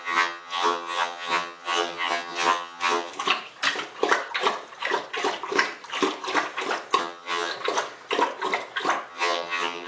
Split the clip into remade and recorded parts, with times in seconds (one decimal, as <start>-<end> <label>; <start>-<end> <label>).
0.0-3.1 remade; 3.1-7.0 recorded; 7.0-7.5 remade; 7.5-9.1 recorded; 9.1-9.9 remade